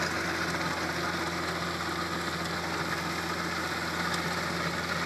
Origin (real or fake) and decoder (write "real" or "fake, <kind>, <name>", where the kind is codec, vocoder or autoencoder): real